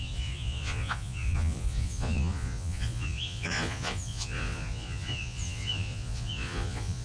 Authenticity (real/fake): fake